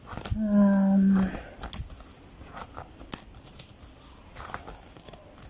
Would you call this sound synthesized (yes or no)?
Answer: no